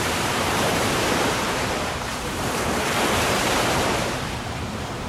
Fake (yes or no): yes